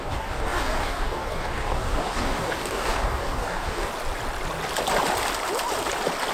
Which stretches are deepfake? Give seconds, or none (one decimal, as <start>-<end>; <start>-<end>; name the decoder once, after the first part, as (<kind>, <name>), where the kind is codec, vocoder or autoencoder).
0.0-3.9 (codec, DAC)